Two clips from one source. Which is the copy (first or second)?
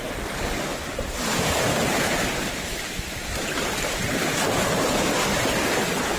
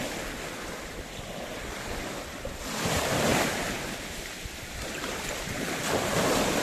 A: second